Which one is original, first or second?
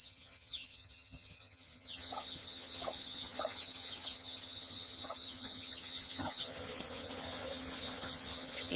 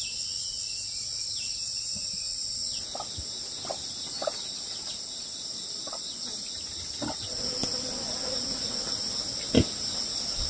second